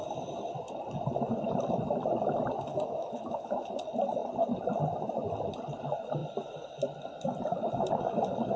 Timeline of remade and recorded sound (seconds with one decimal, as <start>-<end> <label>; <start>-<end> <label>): 0.0-2.7 recorded; 2.7-3.7 remade; 3.7-8.6 recorded